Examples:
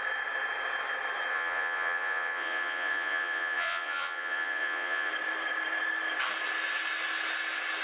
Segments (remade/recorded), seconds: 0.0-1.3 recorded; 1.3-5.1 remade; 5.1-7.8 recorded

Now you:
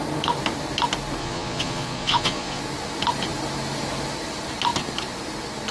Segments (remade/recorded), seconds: 0.0-1.2 recorded; 1.2-2.6 remade; 2.6-5.7 recorded

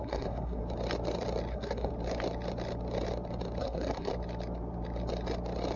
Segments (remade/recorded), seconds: 0.0-0.6 remade; 0.6-1.5 recorded; 1.5-1.9 remade; 1.9-3.6 recorded; 3.6-4.1 remade; 4.1-5.8 recorded

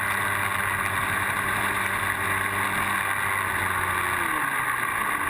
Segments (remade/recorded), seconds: 0.0-1.0 recorded; 1.0-2.0 remade; 2.0-5.3 recorded

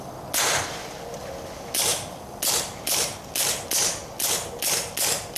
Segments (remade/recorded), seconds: 0.0-5.4 recorded

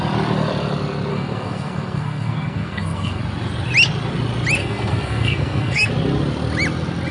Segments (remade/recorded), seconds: 0.0-1.1 recorded; 1.1-3.2 remade; 3.2-4.6 recorded; 4.6-5.9 remade; 5.9-7.1 recorded

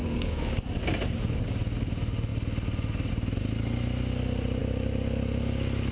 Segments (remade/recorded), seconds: 0.0-0.7 remade; 0.7-5.9 recorded

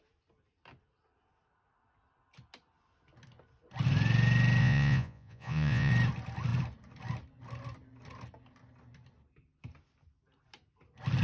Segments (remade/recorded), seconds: 0.0-4.6 recorded; 4.6-5.9 remade; 5.9-11.2 recorded